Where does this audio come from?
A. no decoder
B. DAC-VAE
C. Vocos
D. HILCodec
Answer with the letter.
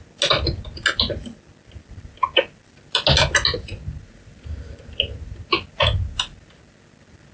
A